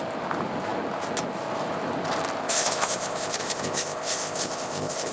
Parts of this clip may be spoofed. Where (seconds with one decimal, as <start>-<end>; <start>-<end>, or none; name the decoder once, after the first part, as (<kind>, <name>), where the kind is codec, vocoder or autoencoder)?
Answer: 2.4-5.1 (codec, ZipCodec)

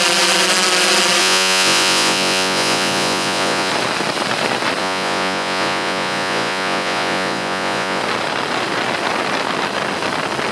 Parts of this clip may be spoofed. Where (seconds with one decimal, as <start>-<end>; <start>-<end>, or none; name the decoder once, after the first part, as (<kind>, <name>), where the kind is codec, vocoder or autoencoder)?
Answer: 1.2-3.7 (vocoder, Vocos); 4.8-8.0

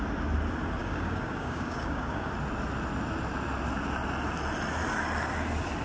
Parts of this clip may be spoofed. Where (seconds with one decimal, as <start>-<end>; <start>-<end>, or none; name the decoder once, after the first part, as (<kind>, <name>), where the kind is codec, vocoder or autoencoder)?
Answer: 0.8-2.3 (codec, DAC)

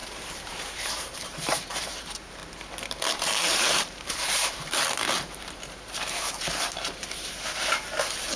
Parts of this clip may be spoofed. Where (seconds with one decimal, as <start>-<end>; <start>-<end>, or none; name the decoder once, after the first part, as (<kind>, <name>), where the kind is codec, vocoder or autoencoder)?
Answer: 0.0-2.4 (vocoder, BigVGAN v2); 3.2-8.4

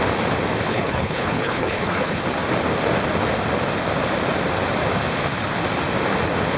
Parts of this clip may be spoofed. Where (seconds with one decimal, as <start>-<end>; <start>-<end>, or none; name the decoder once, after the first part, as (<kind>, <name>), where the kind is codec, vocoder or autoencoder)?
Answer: 0.7-2.2 (codec, HILCodec)

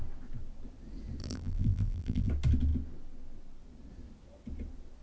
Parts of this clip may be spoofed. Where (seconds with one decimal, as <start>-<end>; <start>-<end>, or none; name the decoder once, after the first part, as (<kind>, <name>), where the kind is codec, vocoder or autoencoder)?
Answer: 1.2-2.3 (vocoder, BigVGAN v2)

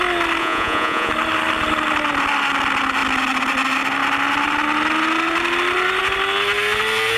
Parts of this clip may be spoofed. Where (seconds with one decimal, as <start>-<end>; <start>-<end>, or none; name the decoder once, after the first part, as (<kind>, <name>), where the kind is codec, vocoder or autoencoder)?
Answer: 0.4-1.1 (vocoder, Vocos)